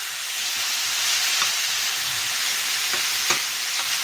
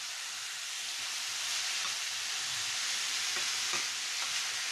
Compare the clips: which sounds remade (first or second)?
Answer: second